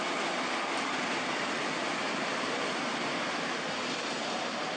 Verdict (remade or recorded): recorded